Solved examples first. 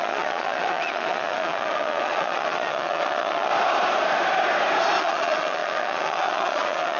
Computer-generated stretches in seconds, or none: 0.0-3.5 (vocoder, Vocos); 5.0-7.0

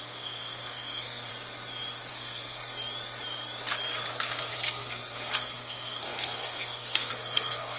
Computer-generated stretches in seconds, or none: 0.0-1.3 (codec, SNAC); 2.1-2.6; 4.5-7.8